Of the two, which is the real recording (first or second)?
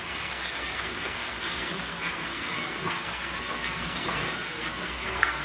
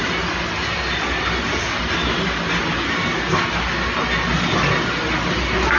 second